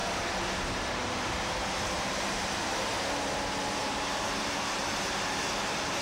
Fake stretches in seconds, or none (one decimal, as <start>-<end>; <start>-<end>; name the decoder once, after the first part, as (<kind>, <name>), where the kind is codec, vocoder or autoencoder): 1.7-2.9 (vocoder, BigVGAN v2); 3.7-6.0